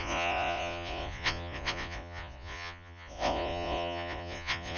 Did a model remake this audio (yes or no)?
yes